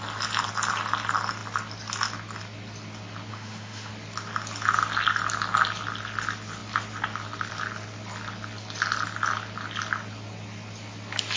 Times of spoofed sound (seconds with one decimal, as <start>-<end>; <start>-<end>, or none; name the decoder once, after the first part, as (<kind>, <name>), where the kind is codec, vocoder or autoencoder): 3.3-3.9 (autoencoder, DAC-VAE)